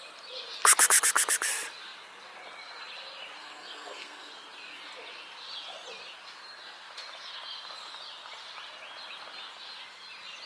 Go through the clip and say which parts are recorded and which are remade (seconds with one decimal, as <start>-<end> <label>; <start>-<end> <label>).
0.0-3.4 recorded; 3.4-4.3 remade; 4.3-10.5 recorded